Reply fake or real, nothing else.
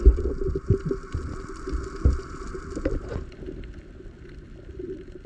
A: real